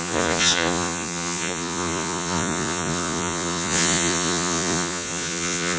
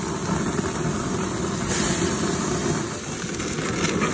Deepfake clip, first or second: first